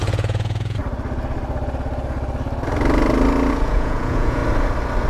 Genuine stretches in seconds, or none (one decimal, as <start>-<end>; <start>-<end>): 0.8-3.5; 4.4-5.1